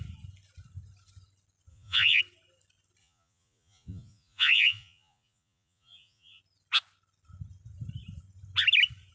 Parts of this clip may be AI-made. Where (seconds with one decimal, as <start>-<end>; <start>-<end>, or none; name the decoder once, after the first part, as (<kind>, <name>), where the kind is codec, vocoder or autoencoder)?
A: 1.7-2.2 (vocoder, Vocos); 3.0-6.4